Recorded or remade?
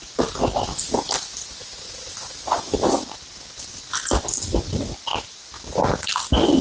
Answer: recorded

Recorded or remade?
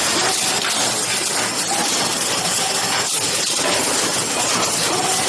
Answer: recorded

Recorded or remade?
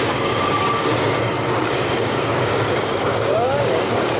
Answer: remade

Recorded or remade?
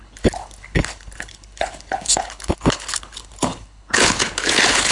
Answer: remade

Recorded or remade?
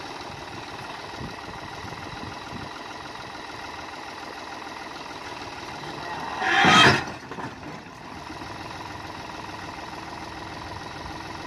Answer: recorded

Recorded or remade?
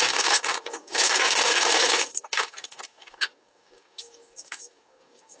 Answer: remade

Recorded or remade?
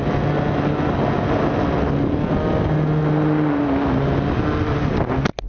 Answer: recorded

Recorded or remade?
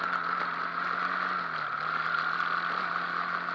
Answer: recorded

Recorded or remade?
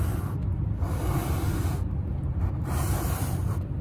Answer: recorded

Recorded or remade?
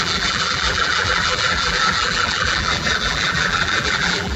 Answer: remade